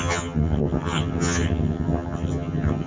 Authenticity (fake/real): fake